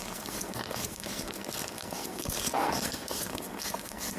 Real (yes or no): no